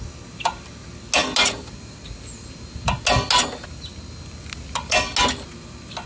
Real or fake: real